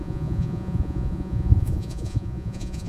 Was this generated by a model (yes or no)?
yes